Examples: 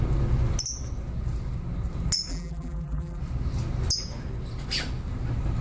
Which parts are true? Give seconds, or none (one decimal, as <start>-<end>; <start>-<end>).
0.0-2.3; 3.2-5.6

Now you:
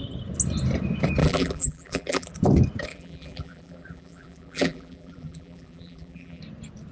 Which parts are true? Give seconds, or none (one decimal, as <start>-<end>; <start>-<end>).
0.0-1.2; 2.3-2.9; 6.4-6.9

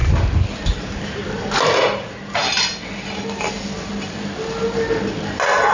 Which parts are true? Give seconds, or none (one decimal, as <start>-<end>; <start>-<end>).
0.0-5.7

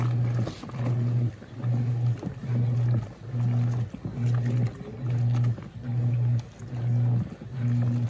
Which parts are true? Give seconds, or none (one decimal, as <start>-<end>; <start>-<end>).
0.0-8.1

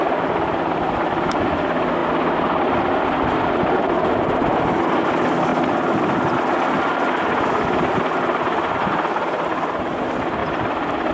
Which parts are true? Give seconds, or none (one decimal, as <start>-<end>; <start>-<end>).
0.0-2.0; 3.9-11.1

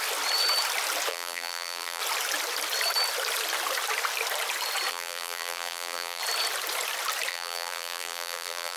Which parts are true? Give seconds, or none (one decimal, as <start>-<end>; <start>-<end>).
0.0-1.1; 2.0-4.9; 6.2-7.3

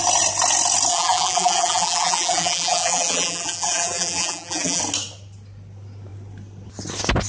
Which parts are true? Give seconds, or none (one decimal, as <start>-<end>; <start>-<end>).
0.0-0.9; 4.8-7.3